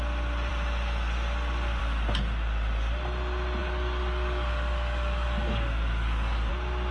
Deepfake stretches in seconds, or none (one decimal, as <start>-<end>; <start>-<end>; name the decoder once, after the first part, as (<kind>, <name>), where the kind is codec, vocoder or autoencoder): 3.6-6.5 (codec, DAC)